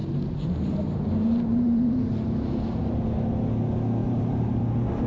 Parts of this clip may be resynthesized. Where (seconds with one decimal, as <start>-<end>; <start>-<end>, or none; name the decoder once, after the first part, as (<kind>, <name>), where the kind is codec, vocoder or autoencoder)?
0.0-2.8 (vocoder, BigVGAN v2); 4.0-4.6